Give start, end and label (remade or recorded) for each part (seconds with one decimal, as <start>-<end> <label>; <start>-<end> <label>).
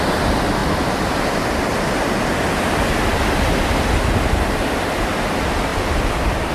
0.0-0.6 recorded; 0.6-1.2 remade; 1.2-5.7 recorded; 5.7-6.5 remade